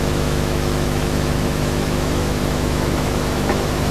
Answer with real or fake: fake